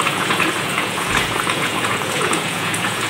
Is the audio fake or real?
fake